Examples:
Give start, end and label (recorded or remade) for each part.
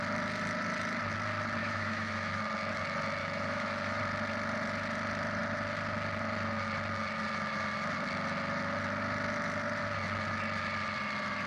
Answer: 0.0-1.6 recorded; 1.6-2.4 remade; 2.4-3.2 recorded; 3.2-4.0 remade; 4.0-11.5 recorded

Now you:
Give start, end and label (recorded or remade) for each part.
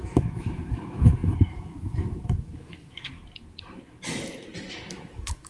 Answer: 0.0-3.2 remade; 3.2-4.9 recorded; 4.9-5.5 remade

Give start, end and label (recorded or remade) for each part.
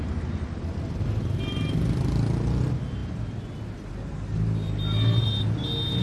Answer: 0.0-6.0 recorded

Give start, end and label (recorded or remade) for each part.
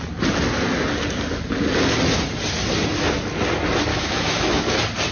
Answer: 0.0-3.9 recorded; 3.9-4.6 remade; 4.6-5.1 recorded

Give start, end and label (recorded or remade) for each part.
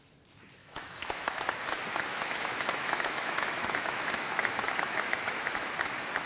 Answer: 0.0-0.6 recorded; 0.6-1.4 remade; 1.4-2.1 recorded; 2.1-5.7 remade; 5.7-6.3 recorded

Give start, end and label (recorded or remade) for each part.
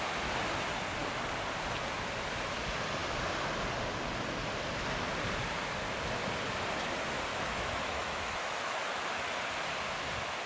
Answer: 0.0-7.3 recorded; 7.3-9.4 remade; 9.4-10.5 recorded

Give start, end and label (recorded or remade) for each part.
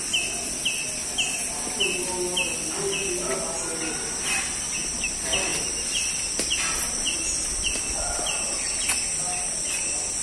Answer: 0.0-10.2 recorded